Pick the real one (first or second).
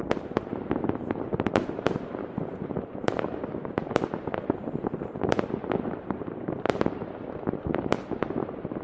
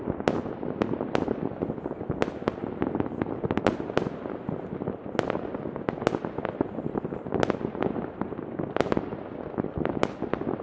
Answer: second